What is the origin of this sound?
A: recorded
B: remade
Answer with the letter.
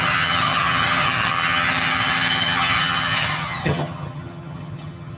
B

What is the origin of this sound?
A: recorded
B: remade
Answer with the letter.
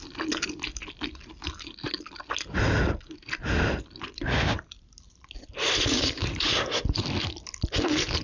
A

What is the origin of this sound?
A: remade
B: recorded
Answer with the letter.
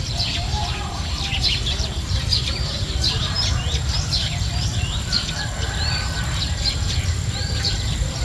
A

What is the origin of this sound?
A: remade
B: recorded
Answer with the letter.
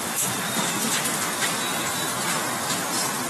B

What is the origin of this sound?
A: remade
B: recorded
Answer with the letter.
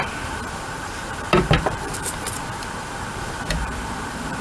A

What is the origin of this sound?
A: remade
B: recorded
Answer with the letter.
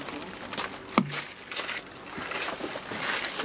B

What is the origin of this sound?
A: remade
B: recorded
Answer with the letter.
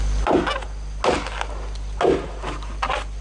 B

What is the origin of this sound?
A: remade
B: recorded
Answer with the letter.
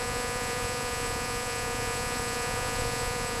A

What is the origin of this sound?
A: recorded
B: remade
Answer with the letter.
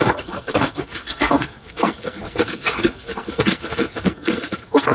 B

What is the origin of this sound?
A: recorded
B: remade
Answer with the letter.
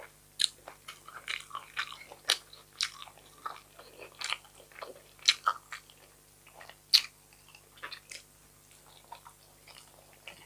A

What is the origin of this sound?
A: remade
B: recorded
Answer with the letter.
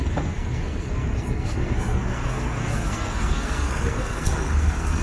A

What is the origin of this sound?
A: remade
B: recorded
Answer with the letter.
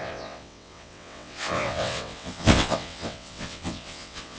A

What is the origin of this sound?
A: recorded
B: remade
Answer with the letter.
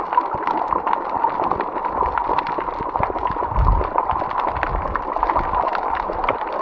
A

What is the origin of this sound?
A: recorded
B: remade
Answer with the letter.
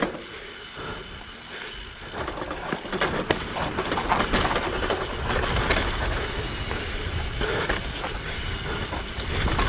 A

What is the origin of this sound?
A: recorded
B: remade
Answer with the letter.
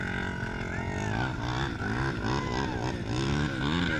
A